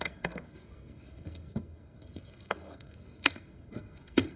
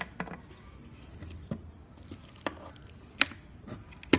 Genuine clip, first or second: second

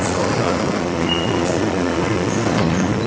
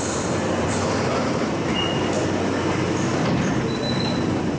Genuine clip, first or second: second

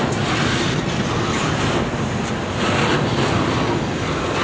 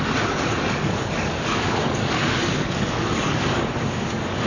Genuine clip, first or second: first